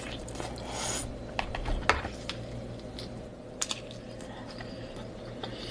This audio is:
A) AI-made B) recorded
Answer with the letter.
B